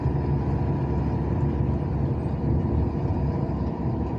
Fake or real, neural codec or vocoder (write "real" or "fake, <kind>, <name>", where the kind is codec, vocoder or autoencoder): real